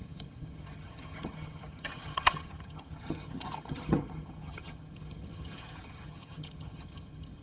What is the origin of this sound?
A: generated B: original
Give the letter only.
A